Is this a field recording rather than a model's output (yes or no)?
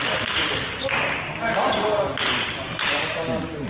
yes